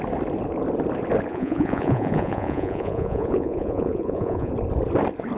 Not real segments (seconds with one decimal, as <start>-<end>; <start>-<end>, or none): 1.3-4.5